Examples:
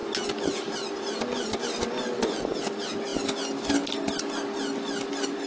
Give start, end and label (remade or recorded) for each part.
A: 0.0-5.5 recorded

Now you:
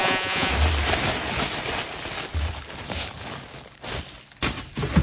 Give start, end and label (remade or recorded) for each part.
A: 0.0-0.5 remade; 0.5-5.0 recorded